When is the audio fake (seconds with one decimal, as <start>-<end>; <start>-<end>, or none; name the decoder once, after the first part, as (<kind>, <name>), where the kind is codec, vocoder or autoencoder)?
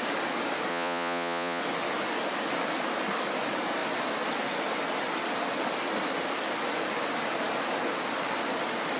0.7-1.6 (vocoder, Vocos)